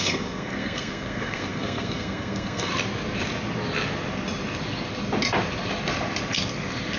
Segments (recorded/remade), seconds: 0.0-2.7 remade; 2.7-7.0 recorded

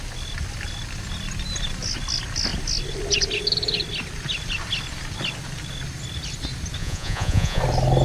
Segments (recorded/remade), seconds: 0.0-6.8 recorded; 6.8-7.6 remade; 7.6-8.0 recorded